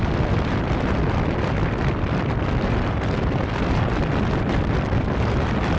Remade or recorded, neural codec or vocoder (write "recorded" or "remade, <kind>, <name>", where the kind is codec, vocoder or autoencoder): remade, vocoder, BigVGAN v2